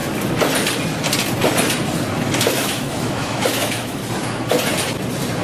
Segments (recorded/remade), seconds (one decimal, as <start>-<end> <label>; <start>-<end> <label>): 0.0-2.5 recorded; 2.5-4.0 remade; 4.0-5.4 recorded